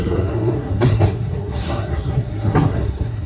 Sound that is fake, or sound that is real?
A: fake